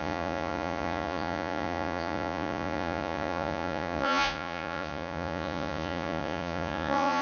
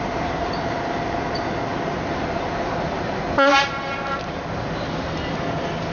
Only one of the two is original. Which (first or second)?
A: second